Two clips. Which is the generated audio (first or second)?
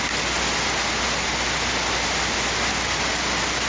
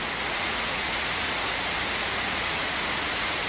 second